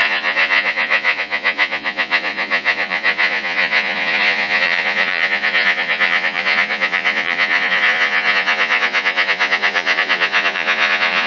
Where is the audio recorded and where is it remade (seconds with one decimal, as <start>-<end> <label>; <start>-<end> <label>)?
0.0-11.3 remade